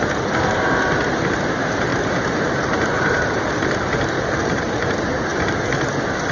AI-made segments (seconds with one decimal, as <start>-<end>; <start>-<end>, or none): 0.0-5.3